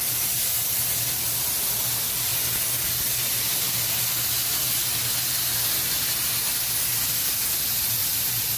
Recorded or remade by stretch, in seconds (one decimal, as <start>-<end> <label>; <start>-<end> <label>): 0.0-8.0 recorded; 8.0-8.6 remade